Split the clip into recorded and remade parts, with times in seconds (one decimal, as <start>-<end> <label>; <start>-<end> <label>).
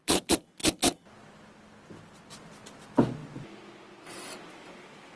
0.0-5.2 recorded